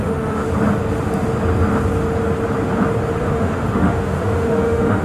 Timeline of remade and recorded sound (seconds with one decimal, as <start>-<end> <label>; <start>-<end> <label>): 0.0-0.4 remade; 0.4-3.2 recorded; 3.2-5.0 remade